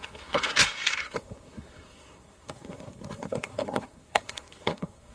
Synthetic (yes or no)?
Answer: yes